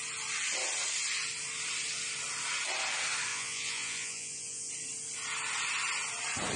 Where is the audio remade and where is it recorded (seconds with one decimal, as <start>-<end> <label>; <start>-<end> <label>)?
0.0-3.3 recorded; 3.3-4.7 remade; 4.7-6.6 recorded